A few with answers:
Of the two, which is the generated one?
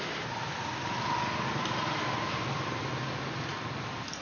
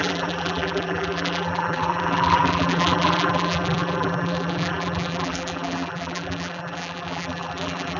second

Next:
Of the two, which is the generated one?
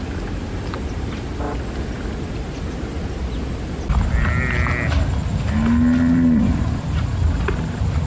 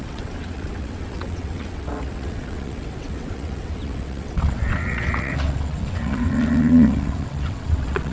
second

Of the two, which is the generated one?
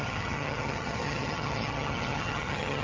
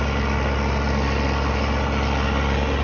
first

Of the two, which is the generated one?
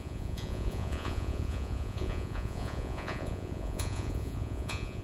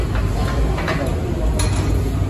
first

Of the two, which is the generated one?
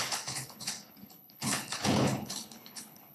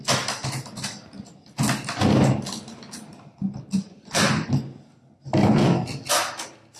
first